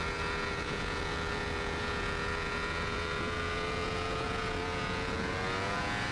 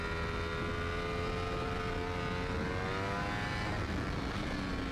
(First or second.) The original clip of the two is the second